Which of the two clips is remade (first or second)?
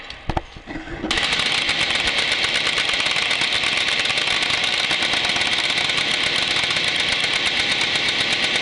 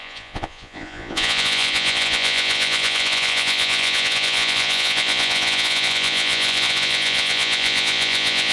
second